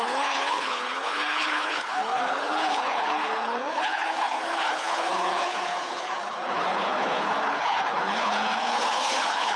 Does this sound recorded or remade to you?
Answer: remade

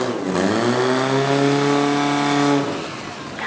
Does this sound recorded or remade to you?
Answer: recorded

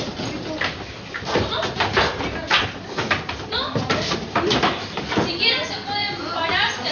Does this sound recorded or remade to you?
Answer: recorded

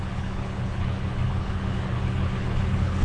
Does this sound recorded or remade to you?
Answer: remade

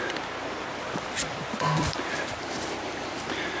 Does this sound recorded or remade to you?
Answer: recorded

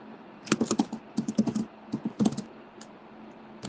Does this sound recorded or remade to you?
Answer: recorded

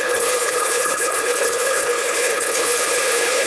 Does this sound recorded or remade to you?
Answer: remade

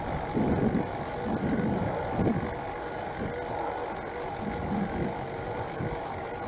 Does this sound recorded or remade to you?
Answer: recorded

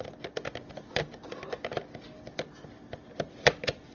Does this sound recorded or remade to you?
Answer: recorded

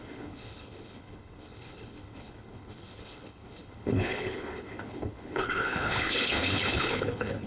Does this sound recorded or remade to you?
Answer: remade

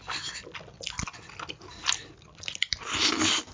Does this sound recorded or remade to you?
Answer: recorded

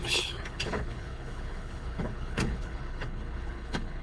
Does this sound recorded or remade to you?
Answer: remade